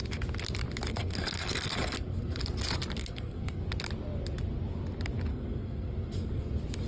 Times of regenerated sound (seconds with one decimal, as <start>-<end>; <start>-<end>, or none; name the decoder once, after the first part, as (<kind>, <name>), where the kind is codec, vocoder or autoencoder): 0.9-2.4 (codec, SNAC); 3.0-3.6; 5.3-6.5